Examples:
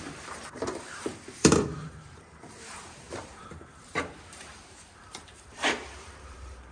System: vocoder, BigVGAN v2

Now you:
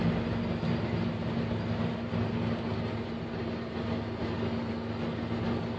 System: none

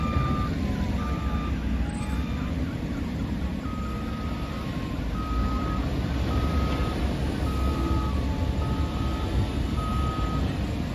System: none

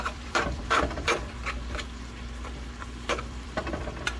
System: vocoder, BigVGAN v2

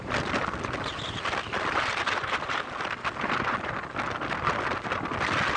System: vocoder, BigVGAN v2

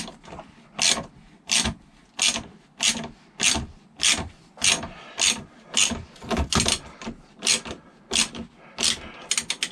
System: none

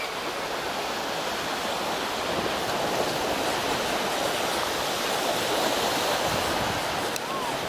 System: none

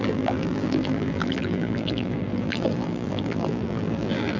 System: vocoder, BigVGAN v2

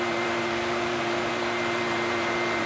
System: vocoder, BigVGAN v2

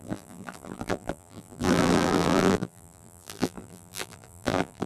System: vocoder, BigVGAN v2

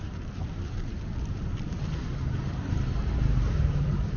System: vocoder, BigVGAN v2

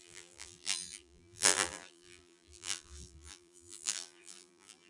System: vocoder, BigVGAN v2